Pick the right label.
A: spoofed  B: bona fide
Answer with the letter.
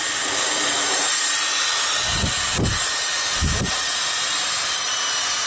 B